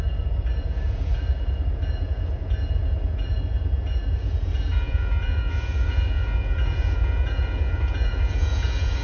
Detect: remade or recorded remade